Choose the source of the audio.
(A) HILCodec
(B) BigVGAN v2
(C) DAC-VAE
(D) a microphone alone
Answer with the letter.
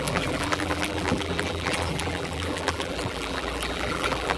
B